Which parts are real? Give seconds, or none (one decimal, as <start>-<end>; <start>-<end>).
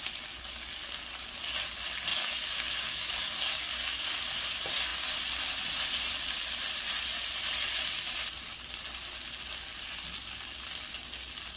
0.0-2.1; 4.2-11.6